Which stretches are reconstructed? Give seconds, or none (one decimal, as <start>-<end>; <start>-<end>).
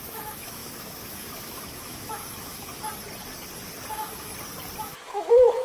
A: 0.0-2.7; 3.9-4.3; 4.8-5.6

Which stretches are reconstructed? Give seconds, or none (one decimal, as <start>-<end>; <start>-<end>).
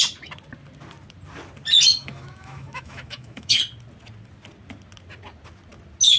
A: 2.0-3.6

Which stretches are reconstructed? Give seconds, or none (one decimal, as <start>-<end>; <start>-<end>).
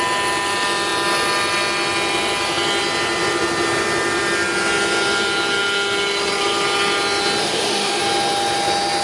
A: 7.4-8.0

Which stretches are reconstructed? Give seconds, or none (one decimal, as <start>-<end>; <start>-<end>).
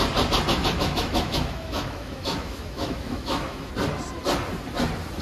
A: 0.6-3.7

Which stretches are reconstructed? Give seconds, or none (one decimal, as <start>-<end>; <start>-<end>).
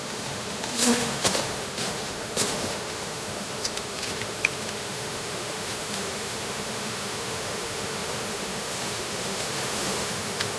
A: 0.0-10.6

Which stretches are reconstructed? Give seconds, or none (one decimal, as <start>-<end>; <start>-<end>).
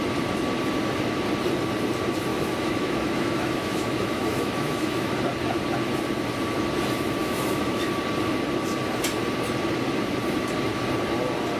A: 2.3-5.2; 7.2-7.9